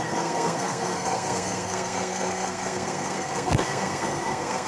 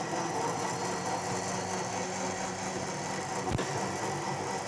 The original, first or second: second